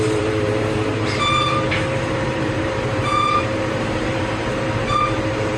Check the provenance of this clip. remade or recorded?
remade